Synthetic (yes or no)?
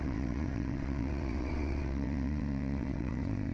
yes